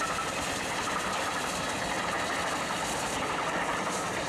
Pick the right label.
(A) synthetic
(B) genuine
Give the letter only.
B